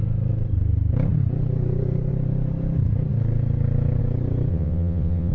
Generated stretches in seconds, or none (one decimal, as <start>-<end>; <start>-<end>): 4.5-5.3